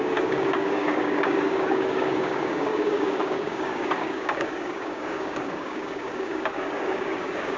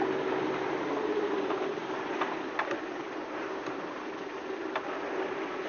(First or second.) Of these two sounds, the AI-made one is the first